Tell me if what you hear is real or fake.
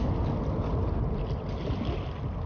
real